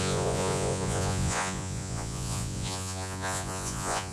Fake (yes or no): yes